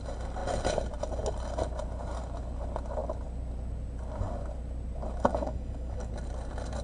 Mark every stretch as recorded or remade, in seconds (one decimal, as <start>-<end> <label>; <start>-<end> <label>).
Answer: 0.0-5.3 recorded; 5.3-6.1 remade; 6.1-6.8 recorded